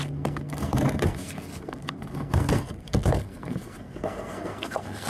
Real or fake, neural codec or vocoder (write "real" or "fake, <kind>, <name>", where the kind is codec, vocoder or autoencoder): fake, codec, SNAC